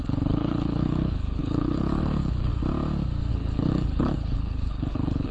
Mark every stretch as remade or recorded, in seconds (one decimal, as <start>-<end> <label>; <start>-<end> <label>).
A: 0.0-2.5 remade; 2.5-3.3 recorded; 3.3-5.3 remade